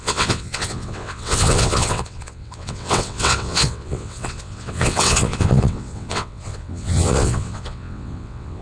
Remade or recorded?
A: remade